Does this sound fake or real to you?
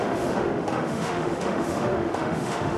fake